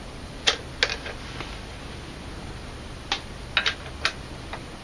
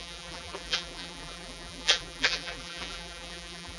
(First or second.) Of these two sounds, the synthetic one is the second